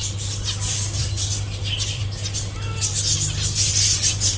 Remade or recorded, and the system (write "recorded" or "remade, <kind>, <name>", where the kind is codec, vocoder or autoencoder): recorded